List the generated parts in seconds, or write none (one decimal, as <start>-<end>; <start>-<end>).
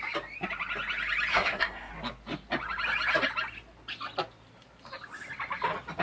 1.3-1.9